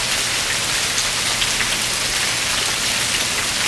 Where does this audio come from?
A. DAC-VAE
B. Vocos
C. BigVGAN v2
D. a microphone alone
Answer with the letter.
D